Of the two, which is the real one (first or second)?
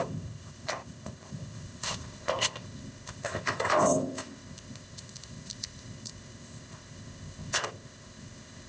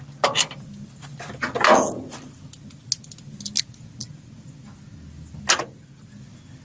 second